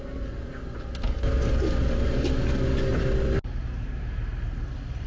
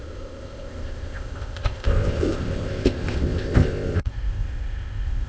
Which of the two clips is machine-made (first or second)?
second